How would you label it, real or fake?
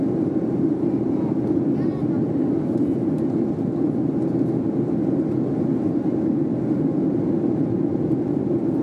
real